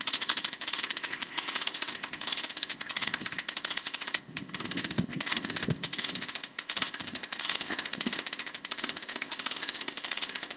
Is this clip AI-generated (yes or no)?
yes